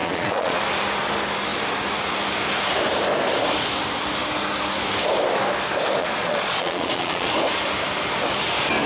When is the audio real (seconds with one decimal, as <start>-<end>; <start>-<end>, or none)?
0.6-6.0; 7.3-8.9